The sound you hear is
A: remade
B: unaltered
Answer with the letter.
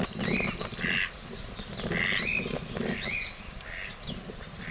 B